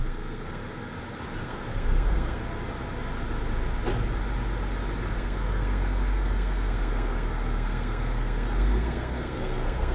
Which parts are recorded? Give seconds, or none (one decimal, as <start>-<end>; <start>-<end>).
0.6-1.4; 2.4-5.1

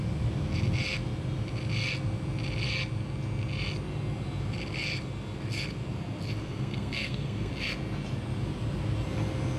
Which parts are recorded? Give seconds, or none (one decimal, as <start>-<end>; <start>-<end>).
0.0-6.4; 7.5-9.6

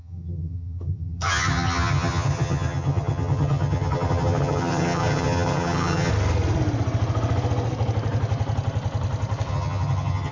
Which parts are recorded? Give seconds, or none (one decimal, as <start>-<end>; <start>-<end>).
6.1-9.5

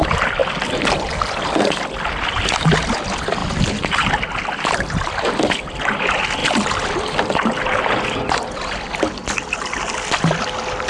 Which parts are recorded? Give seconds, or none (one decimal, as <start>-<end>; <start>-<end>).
0.0-0.4; 2.0-10.9

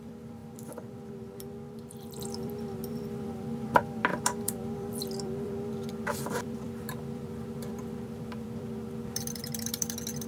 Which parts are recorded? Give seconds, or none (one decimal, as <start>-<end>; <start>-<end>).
none

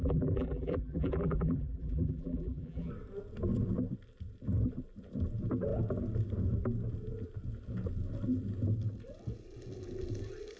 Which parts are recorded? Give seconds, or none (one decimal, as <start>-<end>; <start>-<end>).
2.9-10.6

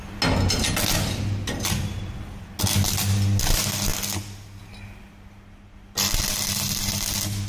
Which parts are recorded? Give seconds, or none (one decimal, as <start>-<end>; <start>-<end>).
0.0-7.5

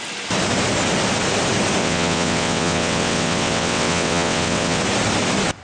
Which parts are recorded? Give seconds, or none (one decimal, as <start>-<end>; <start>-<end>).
0.0-1.8; 4.8-5.6